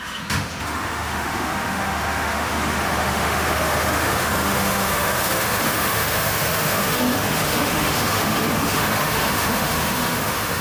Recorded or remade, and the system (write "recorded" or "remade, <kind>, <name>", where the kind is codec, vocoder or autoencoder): remade, autoencoder, DAC-VAE